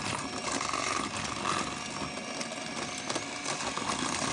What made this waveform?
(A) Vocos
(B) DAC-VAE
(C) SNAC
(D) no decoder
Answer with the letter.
D